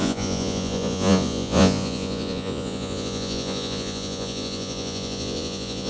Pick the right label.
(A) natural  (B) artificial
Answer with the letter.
B